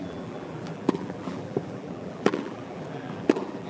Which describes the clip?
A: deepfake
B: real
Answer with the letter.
A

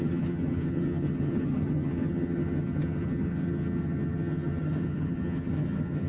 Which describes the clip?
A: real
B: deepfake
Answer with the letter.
B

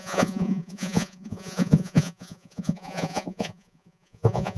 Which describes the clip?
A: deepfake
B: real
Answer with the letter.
A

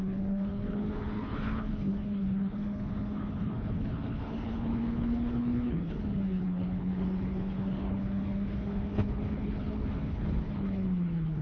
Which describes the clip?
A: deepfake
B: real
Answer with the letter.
A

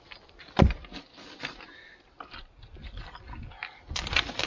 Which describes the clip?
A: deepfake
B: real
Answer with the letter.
B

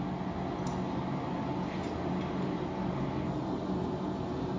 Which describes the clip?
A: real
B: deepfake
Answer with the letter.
A